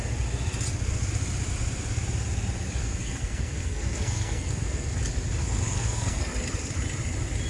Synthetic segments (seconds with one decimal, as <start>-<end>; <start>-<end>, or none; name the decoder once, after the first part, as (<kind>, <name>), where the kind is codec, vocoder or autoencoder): 2.8-5.0 (codec, SNAC); 5.4-6.2